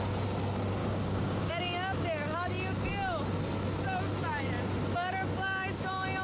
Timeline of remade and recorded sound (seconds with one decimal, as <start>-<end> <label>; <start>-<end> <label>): 0.0-0.8 recorded; 0.8-1.5 remade; 1.5-6.2 recorded